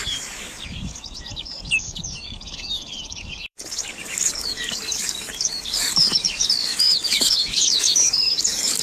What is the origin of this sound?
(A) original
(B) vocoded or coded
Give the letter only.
B